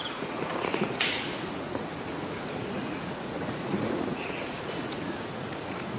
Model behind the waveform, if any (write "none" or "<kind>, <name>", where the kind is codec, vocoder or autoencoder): vocoder, Vocos